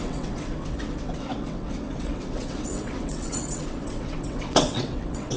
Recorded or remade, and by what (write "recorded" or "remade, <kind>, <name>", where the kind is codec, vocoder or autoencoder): remade, vocoder, WaveNeXt